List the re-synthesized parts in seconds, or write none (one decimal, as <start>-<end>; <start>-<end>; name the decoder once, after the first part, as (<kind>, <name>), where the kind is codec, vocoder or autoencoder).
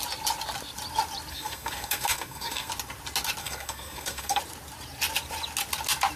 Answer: 1.3-2.7 (codec, SNAC); 3.4-4.4